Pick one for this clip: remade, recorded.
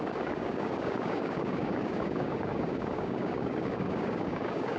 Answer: remade